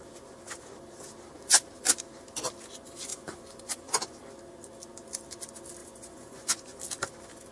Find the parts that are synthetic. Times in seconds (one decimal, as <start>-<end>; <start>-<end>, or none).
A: 3.1-4.2; 5.8-6.8